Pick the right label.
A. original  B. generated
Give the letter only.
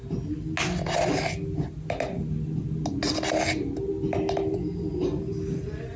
A